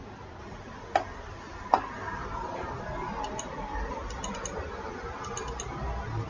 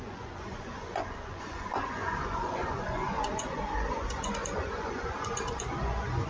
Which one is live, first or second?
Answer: first